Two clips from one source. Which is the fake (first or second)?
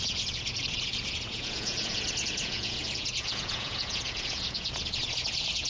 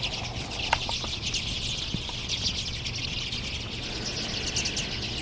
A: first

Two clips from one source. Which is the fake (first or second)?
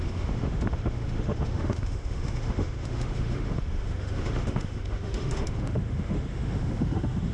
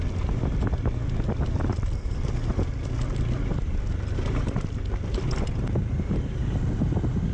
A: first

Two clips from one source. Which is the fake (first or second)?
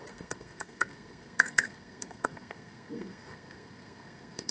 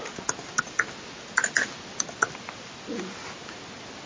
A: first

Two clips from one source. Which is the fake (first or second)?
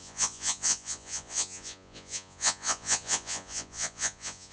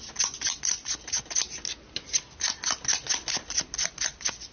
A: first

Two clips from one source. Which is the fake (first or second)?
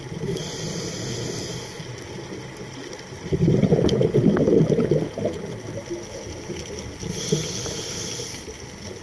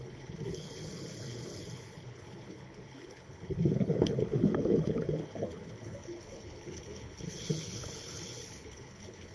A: second